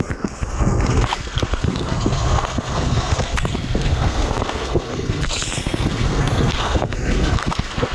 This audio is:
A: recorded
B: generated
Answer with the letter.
B